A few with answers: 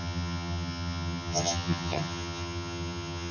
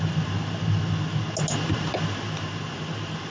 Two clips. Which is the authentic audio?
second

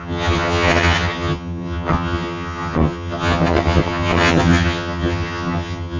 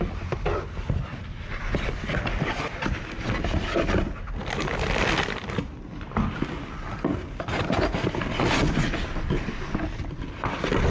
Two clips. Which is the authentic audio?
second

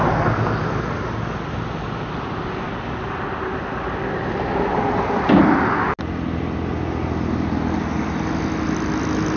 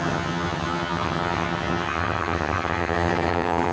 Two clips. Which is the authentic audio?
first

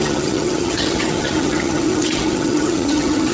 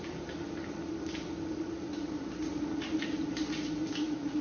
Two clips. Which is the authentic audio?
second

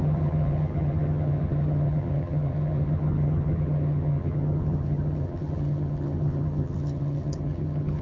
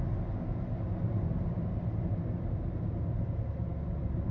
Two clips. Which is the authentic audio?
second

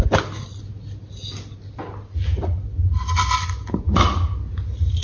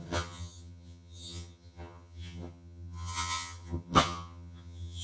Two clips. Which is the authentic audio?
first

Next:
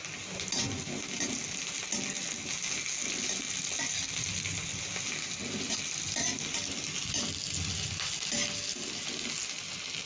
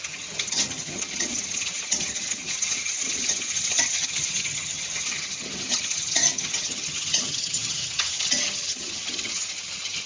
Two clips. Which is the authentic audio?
first